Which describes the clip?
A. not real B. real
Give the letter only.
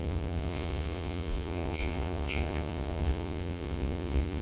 A